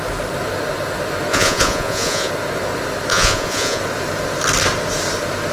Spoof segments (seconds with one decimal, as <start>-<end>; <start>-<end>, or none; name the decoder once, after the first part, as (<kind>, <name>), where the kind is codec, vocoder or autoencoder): 1.3-2.3 (vocoder, Vocos); 3.1-3.8